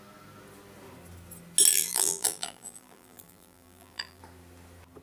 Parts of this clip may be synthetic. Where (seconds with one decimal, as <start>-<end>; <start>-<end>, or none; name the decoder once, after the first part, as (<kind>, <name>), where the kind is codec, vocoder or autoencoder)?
1.7-4.2 (vocoder, BigVGAN v2)